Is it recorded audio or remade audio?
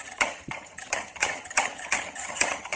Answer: remade